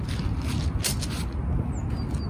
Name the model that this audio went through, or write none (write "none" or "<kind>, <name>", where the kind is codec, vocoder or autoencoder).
none